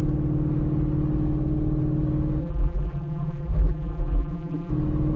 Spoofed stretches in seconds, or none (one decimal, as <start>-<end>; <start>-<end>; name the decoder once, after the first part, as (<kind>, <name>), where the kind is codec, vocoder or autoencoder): 2.4-4.7 (vocoder, BigVGAN v2)